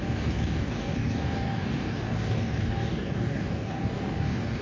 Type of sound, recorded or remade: remade